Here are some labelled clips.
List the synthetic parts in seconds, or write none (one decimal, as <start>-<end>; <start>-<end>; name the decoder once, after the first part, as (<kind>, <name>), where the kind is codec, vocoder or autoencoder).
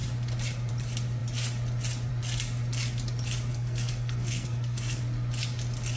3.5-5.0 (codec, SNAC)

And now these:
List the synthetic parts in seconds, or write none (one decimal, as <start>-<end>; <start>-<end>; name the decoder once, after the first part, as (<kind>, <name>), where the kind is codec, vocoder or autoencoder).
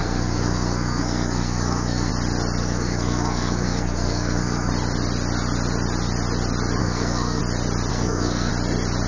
0.0-2.1 (codec, SNAC); 2.6-4.7; 6.8-7.4; 7.9-8.5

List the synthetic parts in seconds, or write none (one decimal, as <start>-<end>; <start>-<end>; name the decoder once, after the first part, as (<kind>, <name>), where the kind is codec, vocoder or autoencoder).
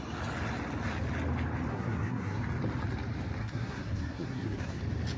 1.7-2.4 (codec, SNAC); 3.4-4.8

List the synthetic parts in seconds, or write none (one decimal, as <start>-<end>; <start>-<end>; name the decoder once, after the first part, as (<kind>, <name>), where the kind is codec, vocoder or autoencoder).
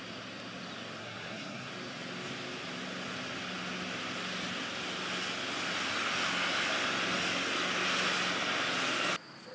1.0-1.7 (codec, SNAC)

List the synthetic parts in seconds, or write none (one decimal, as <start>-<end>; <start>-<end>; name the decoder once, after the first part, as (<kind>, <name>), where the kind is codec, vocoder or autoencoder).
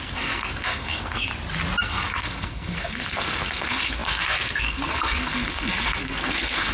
0.0-1.3 (codec, SNAC); 1.8-6.7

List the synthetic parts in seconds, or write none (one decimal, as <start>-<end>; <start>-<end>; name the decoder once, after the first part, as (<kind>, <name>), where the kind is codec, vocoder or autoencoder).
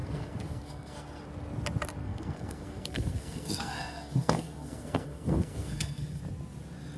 0.0-1.2 (codec, SNAC); 2.0-6.2